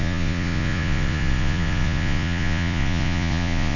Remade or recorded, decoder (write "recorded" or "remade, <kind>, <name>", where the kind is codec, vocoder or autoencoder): remade, vocoder, Vocos